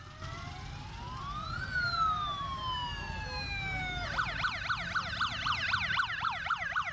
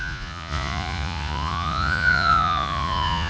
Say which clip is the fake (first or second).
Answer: second